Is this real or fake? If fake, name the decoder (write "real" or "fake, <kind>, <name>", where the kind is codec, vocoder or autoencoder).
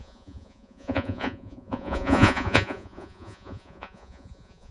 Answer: fake, vocoder, Vocos